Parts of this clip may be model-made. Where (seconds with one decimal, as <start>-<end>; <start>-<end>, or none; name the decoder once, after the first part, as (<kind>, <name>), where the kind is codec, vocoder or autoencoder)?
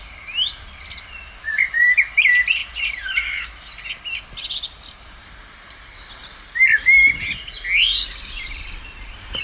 2.6-3.9 (vocoder, BigVGAN v2); 7.8-9.4